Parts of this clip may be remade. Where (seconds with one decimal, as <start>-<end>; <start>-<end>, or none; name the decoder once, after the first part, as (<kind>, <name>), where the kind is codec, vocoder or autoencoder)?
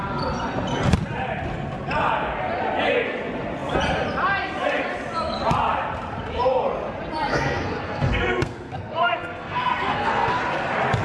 7.3-10.4 (codec, SNAC)